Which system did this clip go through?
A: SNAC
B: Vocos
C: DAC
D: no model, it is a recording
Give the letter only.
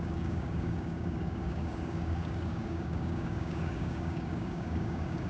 C